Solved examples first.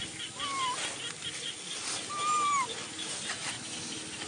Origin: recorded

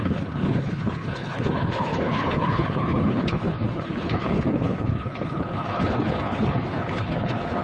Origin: remade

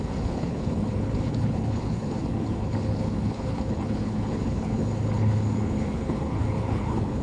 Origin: remade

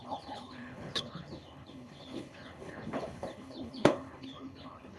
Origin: remade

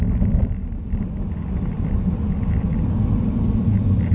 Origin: recorded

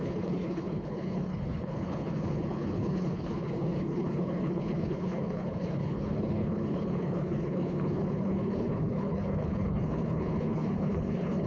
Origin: remade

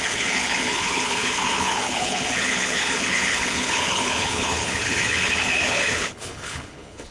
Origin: remade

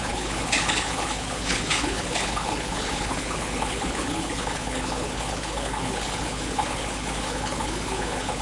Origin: remade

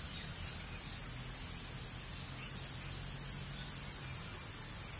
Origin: recorded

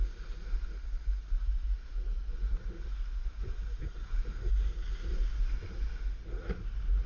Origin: recorded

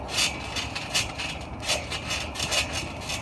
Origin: recorded